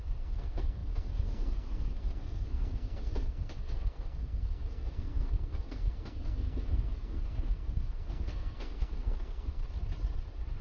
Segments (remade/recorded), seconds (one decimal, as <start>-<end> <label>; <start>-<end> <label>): 0.0-9.6 remade; 9.6-10.6 recorded